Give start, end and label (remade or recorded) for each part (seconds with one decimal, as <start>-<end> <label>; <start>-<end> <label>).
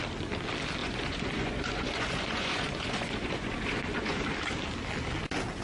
0.0-0.8 recorded; 0.8-4.2 remade; 4.2-5.6 recorded